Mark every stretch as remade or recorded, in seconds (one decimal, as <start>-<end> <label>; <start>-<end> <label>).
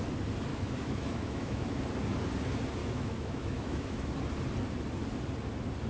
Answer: 0.0-0.5 recorded; 0.5-1.8 remade; 1.8-2.8 recorded; 2.8-4.1 remade; 4.1-5.9 recorded